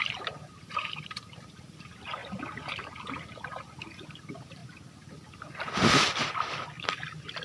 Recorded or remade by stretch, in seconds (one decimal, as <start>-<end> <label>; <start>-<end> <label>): 0.0-4.6 remade; 4.6-7.4 recorded